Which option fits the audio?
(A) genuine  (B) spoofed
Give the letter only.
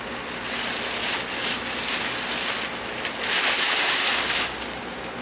A